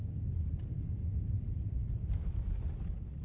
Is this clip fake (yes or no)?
yes